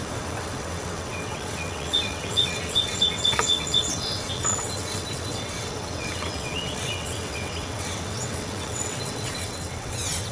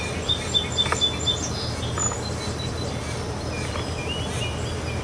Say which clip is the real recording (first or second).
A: second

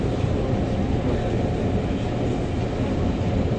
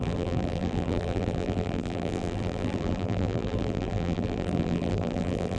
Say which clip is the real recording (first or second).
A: first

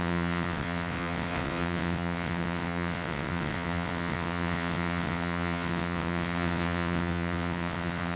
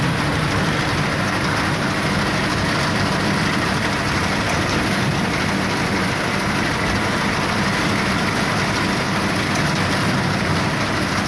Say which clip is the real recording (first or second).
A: second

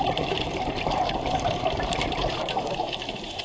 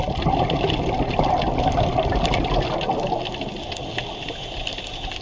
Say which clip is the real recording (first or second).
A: second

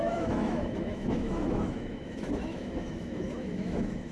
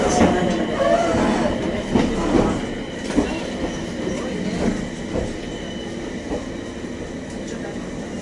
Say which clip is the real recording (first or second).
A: second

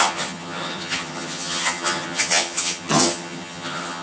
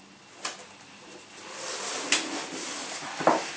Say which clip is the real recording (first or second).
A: second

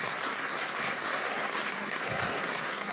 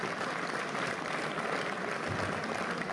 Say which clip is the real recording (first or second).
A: second